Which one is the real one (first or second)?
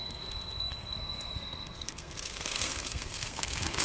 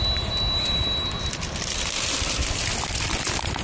second